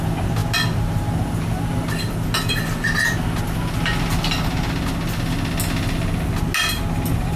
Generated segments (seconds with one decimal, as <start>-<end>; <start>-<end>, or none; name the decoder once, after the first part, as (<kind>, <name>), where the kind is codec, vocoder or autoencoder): none

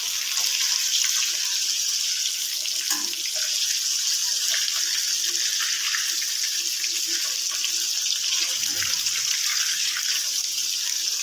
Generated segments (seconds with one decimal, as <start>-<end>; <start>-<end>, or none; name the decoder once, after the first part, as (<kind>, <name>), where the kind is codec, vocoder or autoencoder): 9.5-10.1 (codec, DAC)

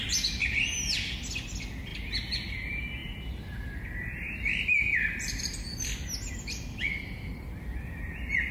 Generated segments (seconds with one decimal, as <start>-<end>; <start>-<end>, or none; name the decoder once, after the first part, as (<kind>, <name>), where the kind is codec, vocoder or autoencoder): none

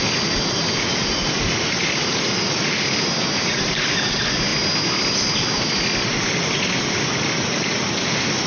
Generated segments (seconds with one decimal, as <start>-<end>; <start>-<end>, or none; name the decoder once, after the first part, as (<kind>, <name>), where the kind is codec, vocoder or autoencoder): none